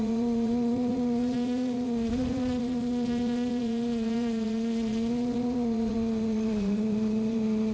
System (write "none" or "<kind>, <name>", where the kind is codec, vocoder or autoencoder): vocoder, Vocos